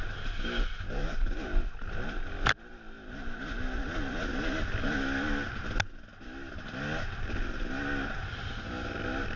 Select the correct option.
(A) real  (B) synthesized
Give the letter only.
A